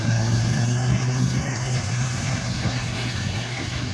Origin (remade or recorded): remade